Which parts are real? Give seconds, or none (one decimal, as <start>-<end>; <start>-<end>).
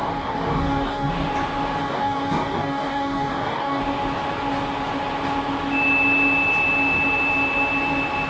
1.1-1.8; 3.8-8.3